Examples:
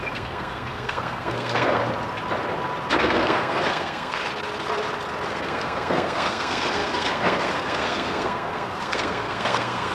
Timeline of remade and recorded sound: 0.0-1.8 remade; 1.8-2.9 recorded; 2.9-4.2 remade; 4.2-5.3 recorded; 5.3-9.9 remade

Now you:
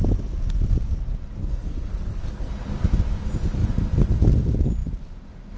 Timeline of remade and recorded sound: 0.0-1.4 recorded; 1.4-2.5 remade; 2.5-5.6 recorded

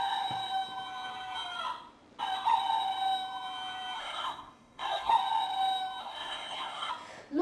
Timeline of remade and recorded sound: 0.0-4.0 recorded; 4.0-5.1 remade; 5.1-6.0 recorded; 6.0-6.9 remade; 6.9-7.4 recorded

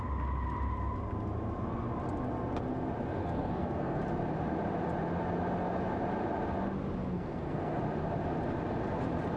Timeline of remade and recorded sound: 0.0-3.2 recorded; 3.2-4.0 remade; 4.0-7.1 recorded; 7.1-7.8 remade; 7.8-9.4 recorded

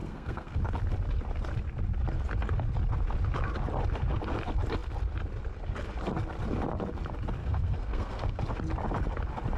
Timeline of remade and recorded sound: 0.0-0.6 remade; 0.6-7.4 recorded; 7.4-8.4 remade; 8.4-9.6 recorded

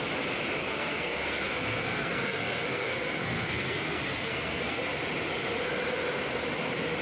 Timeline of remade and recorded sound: 0.0-0.6 recorded; 0.6-4.8 remade; 4.8-7.0 recorded